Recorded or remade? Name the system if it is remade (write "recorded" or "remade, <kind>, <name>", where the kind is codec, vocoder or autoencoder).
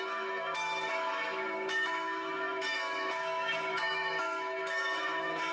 remade, autoencoder, DAC-VAE